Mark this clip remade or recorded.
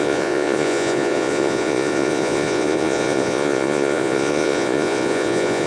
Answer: remade